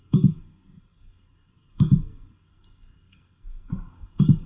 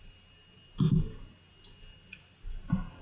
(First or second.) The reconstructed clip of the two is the first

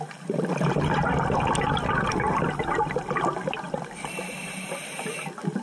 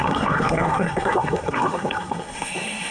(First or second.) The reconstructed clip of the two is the second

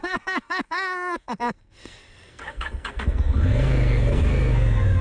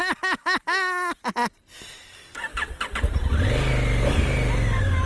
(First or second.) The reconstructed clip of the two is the first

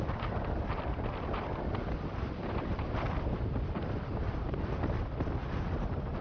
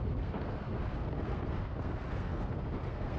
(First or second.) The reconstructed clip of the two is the second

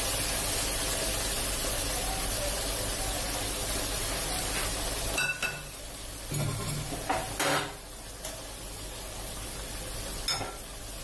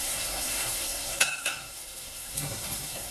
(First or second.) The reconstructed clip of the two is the second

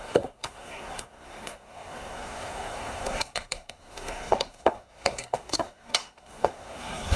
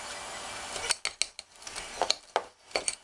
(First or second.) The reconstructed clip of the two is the first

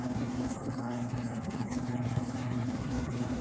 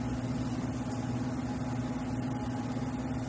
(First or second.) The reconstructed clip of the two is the first